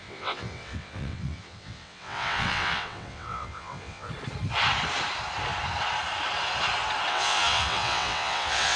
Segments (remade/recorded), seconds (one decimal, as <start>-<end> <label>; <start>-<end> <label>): 0.0-4.1 remade; 4.1-7.1 recorded; 7.1-8.8 remade